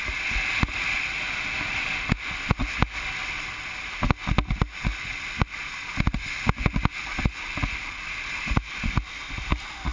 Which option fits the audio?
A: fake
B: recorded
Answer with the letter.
B